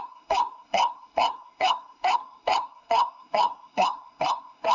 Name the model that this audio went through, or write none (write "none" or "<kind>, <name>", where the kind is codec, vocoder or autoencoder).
codec, SNAC